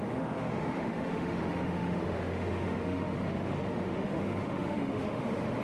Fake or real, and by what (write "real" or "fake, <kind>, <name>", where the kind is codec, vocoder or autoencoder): fake, autoencoder, DAC-VAE